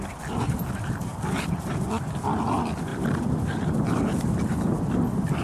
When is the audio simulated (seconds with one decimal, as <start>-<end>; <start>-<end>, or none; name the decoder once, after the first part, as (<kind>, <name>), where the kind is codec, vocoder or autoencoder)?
none